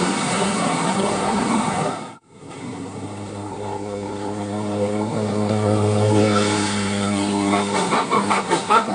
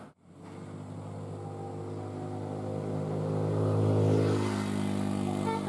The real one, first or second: second